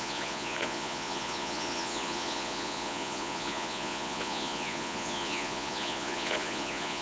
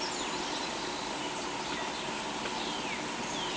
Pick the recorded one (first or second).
second